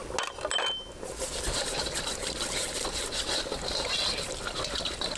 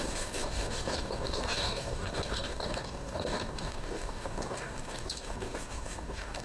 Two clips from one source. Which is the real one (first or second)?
first